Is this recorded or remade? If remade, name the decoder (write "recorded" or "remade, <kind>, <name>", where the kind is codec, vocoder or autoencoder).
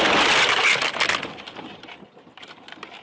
recorded